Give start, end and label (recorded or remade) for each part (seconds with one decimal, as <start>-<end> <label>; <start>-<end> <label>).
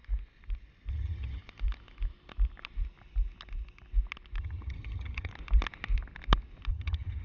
0.0-0.9 recorded; 0.9-1.4 remade; 1.4-4.4 recorded; 4.4-5.3 remade; 5.3-6.7 recorded; 6.7-7.2 remade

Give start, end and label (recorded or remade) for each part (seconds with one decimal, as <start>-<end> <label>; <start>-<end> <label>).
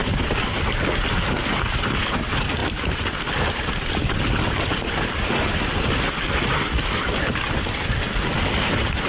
0.0-9.1 recorded